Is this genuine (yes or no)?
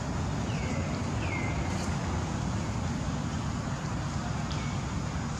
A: yes